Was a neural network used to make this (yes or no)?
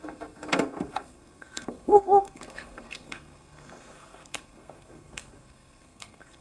yes